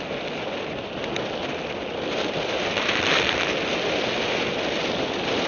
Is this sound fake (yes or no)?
no